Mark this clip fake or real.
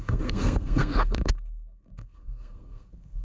fake